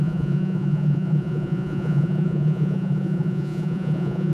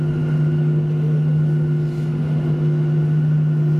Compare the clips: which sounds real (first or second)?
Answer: second